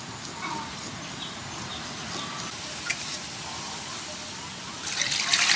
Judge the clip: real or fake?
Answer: real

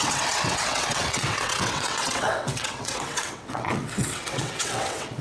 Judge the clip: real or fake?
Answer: fake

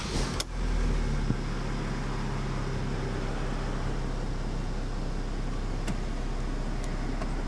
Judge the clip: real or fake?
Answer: real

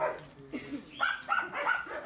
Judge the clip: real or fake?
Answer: real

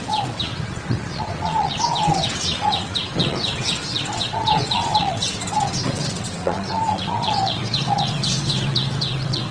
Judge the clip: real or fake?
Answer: fake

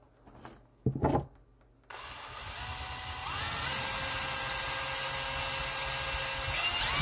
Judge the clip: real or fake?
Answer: real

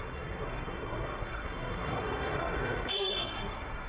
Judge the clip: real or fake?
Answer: fake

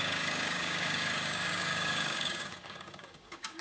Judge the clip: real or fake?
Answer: fake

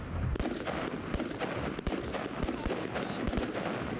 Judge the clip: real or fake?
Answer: real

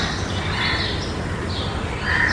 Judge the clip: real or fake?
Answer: real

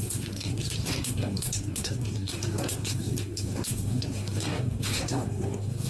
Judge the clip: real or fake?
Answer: fake